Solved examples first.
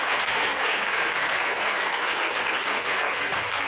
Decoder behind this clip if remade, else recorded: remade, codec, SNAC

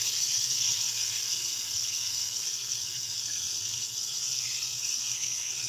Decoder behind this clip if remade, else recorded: remade, codec, SNAC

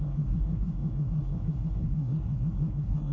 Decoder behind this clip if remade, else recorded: remade, codec, SNAC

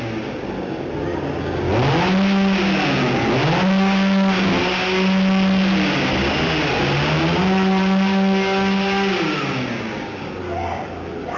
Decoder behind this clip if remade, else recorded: recorded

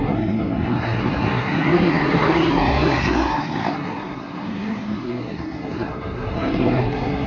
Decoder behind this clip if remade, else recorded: remade, codec, SNAC